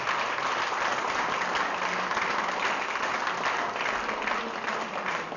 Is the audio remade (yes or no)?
no